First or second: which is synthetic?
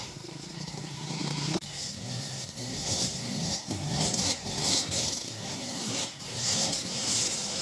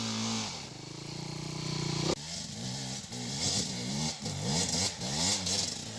first